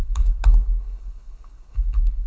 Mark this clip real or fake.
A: fake